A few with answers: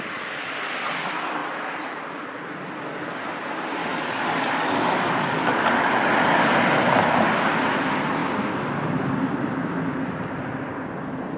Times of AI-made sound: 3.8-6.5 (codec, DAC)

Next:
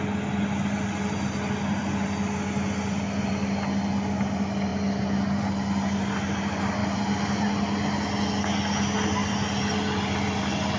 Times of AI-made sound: none

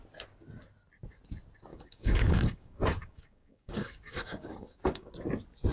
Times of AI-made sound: 1.7-5.1 (codec, DAC)

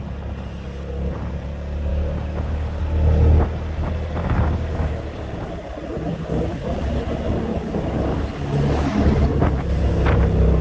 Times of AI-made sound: 1.9-2.8 (codec, DAC); 4.2-5.5; 6.1-7.0; 7.5-8.1

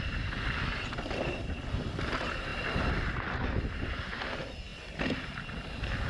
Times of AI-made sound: none

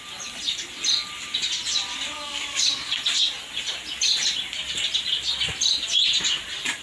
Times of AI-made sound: 1.9-2.9 (codec, DAC)

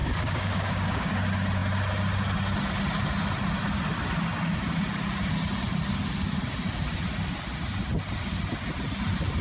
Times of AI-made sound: 0.0-1.1 (codec, DAC)

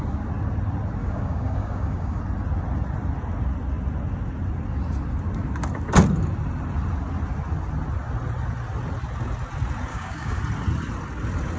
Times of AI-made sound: 1.0-2.2 (codec, DAC); 9.9-10.4